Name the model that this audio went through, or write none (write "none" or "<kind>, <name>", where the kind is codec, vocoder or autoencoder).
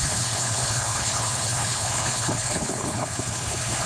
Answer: codec, HILCodec